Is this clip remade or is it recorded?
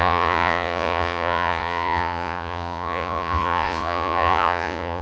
remade